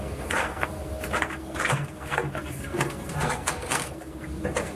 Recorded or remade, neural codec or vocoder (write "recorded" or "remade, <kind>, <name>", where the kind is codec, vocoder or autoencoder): remade, codec, SNAC